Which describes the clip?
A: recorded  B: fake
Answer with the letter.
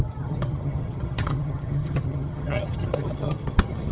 B